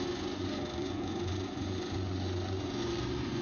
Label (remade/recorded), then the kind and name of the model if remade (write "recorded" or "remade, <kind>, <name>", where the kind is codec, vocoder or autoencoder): remade, vocoder, Vocos